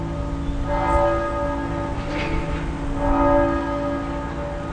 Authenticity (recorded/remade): recorded